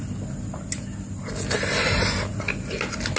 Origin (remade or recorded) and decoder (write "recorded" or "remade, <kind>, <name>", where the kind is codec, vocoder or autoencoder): recorded